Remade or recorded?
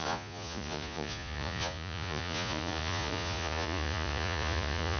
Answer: remade